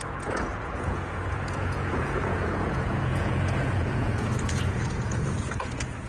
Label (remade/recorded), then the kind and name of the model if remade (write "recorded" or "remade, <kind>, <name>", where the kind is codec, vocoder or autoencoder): remade, vocoder, Vocos